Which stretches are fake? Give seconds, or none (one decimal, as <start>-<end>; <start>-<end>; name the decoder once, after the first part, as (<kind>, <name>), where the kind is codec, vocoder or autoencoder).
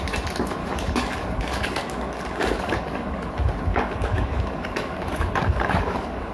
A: 0.6-3.3 (codec, DAC); 3.7-6.3